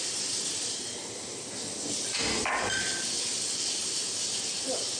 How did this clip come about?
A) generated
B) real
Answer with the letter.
B